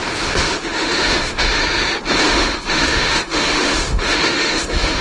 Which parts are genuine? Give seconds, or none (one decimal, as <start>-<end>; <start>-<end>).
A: 1.6-2.2